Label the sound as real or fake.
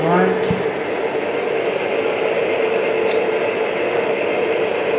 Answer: real